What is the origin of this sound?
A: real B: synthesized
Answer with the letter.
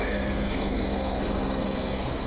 B